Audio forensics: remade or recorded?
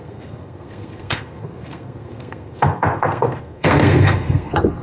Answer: remade